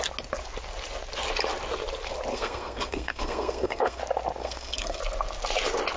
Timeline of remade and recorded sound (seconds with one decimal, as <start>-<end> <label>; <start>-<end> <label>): 0.0-2.3 recorded; 2.3-4.0 remade; 4.0-4.4 recorded; 4.4-5.0 remade; 5.0-6.0 recorded